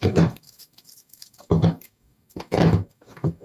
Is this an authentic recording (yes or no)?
no